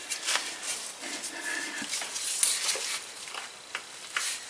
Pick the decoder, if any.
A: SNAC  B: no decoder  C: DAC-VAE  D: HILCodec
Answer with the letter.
B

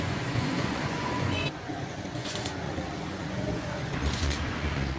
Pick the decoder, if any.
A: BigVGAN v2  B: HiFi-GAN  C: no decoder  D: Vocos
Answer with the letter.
D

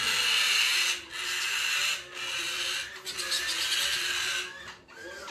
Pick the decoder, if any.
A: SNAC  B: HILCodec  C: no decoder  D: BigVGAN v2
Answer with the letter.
C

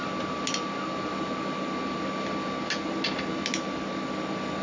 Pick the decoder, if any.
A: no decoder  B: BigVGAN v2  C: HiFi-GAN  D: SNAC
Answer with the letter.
A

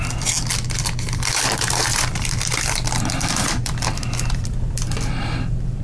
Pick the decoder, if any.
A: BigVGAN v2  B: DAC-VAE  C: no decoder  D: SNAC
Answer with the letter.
A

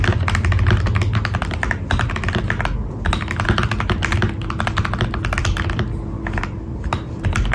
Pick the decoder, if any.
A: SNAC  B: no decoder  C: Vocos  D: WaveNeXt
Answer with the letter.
B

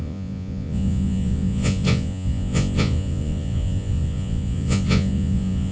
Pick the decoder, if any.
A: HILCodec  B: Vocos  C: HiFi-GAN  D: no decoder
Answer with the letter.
B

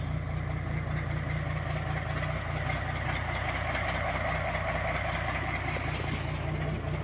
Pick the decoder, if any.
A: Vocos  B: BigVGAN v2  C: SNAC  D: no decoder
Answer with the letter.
D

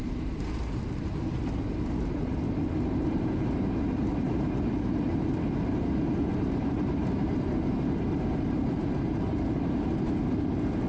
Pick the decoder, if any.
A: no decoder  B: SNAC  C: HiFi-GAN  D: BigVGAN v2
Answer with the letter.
D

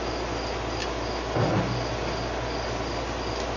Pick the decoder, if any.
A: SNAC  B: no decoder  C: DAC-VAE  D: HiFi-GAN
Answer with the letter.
B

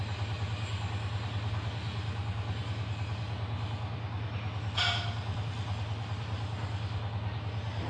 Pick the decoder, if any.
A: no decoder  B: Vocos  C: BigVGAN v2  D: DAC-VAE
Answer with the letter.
A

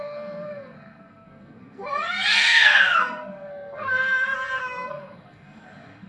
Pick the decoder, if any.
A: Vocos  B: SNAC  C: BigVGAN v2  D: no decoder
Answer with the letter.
B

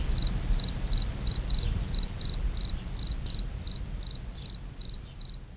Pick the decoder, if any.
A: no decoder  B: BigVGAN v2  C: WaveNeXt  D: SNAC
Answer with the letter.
A